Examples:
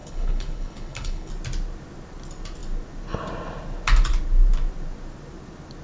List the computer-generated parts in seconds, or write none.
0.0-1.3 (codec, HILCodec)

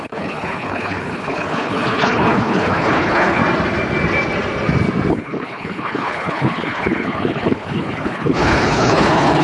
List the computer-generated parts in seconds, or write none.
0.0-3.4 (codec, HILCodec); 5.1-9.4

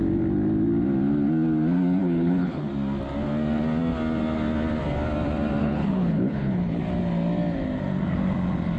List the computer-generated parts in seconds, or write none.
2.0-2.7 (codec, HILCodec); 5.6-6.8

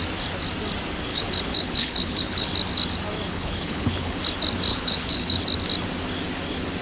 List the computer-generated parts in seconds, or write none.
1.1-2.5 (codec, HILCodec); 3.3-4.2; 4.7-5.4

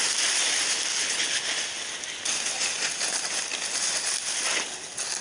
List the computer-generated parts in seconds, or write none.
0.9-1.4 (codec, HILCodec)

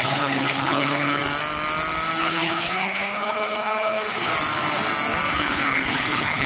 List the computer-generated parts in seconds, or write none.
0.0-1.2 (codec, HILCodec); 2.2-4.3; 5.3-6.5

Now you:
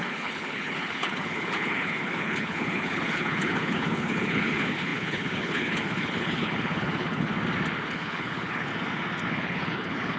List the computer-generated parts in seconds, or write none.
0.0-7.3 (codec, HILCodec); 7.8-8.7; 9.3-10.2